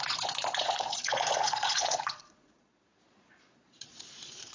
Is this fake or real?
fake